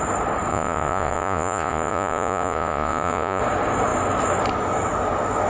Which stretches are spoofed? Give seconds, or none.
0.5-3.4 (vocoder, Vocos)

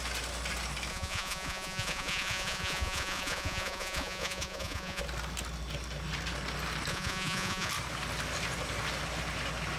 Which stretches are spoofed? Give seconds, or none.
0.9-5.0 (vocoder, Vocos); 6.9-7.7

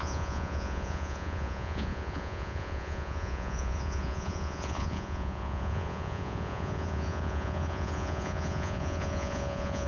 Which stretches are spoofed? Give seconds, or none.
0.0-9.9 (vocoder, Vocos)

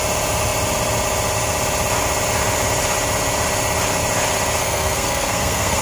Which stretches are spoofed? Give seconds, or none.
4.6-5.8 (codec, SNAC)

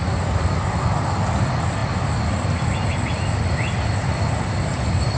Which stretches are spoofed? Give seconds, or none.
none

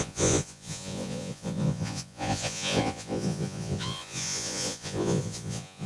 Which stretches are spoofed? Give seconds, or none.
0.0-5.9 (vocoder, Vocos)

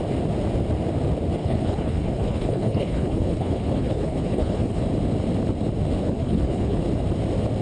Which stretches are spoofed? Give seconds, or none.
1.4-4.8 (codec, HILCodec); 6.0-6.8